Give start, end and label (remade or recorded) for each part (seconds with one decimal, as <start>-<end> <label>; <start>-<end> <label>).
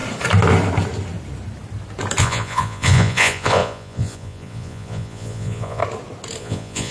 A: 0.0-2.2 recorded; 2.2-5.8 remade; 5.8-6.4 recorded; 6.4-6.9 remade